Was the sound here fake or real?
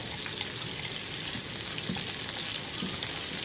real